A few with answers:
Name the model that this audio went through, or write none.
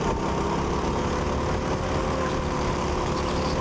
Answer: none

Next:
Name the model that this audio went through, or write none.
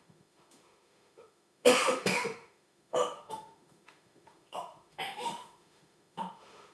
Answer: autoencoder, DAC-VAE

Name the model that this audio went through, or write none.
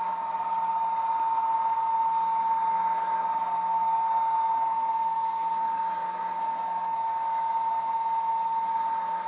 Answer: none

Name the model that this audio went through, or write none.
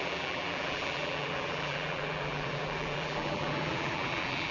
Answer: vocoder, BigVGAN v2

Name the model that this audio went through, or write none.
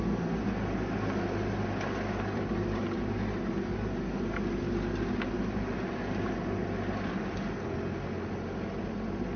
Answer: none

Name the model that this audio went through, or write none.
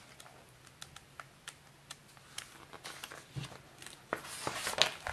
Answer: none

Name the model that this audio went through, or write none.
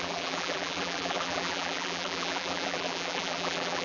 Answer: vocoder, BigVGAN v2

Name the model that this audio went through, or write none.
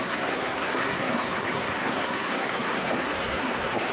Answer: codec, SNAC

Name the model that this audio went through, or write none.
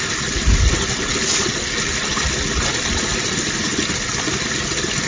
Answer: none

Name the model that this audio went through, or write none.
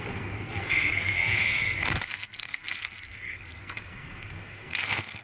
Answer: codec, SNAC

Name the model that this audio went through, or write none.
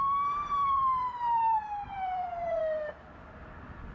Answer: vocoder, BigVGAN v2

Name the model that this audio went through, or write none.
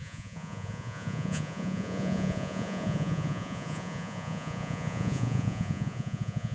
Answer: vocoder, Vocos